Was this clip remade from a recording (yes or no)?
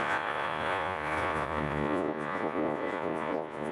yes